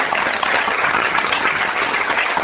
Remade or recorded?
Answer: remade